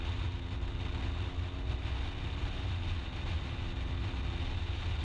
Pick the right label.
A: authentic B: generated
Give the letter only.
A